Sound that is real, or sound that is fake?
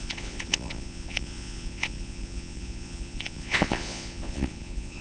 fake